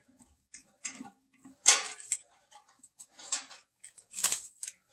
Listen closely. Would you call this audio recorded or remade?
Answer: remade